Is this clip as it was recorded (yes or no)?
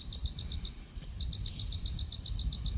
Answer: yes